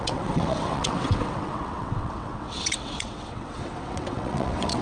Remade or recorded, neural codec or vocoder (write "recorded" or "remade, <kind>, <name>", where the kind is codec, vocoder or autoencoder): remade, vocoder, WaveNeXt